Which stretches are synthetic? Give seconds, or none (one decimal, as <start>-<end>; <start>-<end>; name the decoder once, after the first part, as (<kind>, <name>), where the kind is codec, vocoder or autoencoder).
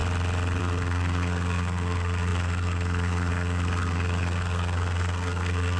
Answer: 0.6-5.8 (codec, SNAC)